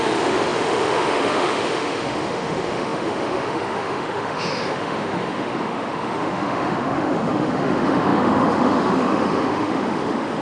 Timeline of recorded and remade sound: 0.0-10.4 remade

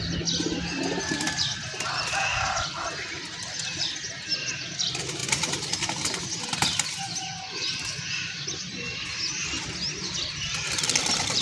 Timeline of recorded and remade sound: 0.0-11.4 recorded

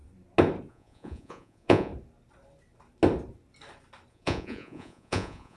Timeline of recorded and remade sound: 0.0-0.7 recorded; 0.7-1.9 remade; 1.9-4.1 recorded; 4.1-5.6 remade

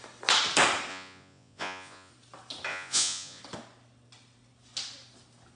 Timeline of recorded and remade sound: 0.0-0.9 recorded; 0.9-2.1 remade; 2.1-2.7 recorded; 2.7-3.4 remade; 3.4-5.6 recorded

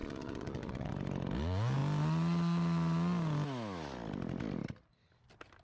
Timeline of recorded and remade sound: 0.0-0.9 remade; 0.9-5.6 recorded

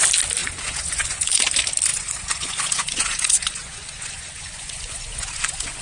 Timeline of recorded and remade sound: 0.0-0.4 recorded; 0.4-1.4 remade; 1.4-1.9 recorded; 1.9-5.8 remade

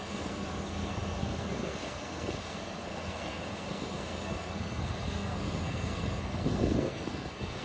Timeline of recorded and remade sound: 0.0-7.6 remade

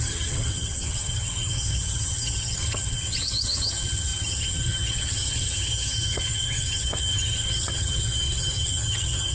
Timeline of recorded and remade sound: 0.0-9.3 remade